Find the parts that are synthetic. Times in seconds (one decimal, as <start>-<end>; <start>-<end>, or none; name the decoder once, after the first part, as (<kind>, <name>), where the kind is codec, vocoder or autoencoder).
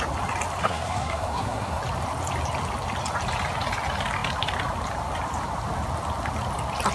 0.6-1.8 (codec, SNAC)